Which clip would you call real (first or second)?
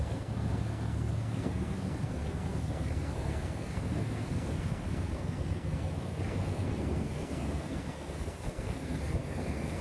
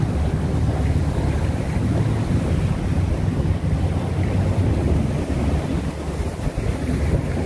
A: second